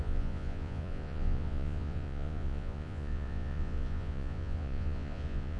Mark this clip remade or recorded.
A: remade